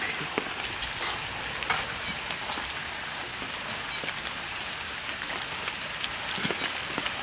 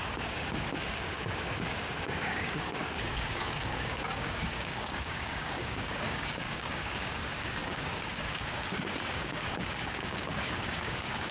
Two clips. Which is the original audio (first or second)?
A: first